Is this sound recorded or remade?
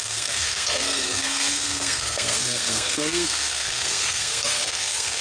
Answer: remade